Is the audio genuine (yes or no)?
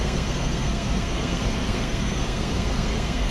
no